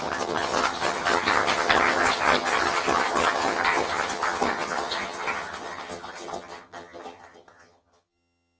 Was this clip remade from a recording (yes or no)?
yes